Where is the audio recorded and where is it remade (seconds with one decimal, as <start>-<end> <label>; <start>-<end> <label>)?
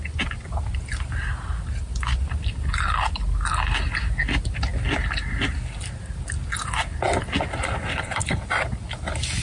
0.0-7.9 recorded; 7.9-8.4 remade; 8.4-9.4 recorded